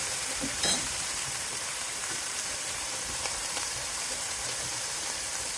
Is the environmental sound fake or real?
fake